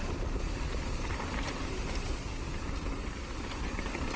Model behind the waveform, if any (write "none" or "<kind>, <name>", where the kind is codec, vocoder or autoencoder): vocoder, BigVGAN v2